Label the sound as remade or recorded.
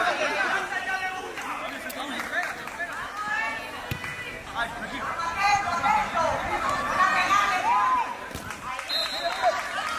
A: recorded